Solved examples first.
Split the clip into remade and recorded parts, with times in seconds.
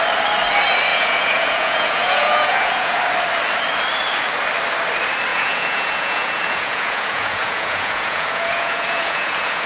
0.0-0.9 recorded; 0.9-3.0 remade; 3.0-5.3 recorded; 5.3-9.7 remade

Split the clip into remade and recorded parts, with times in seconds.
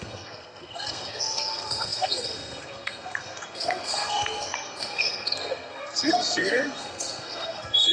0.0-7.9 remade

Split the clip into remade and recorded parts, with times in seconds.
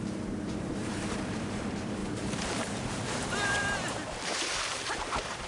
0.0-5.5 remade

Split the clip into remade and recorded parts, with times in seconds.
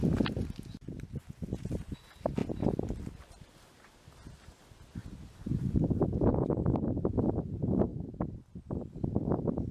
0.0-5.0 recorded; 5.0-5.8 remade; 5.8-9.7 recorded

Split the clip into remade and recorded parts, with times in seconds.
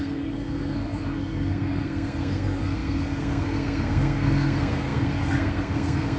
0.0-6.2 remade